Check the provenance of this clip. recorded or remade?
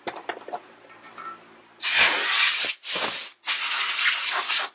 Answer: recorded